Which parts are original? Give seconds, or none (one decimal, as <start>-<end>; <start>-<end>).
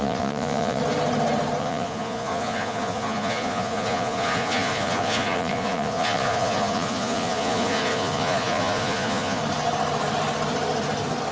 0.8-1.6; 9.4-11.3